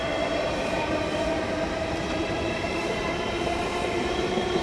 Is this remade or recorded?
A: remade